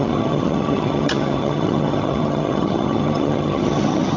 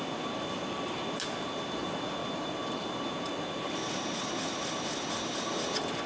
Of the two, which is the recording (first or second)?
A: second